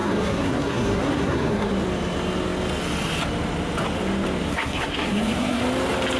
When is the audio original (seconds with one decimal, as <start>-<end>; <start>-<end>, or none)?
1.7-4.5; 5.6-6.2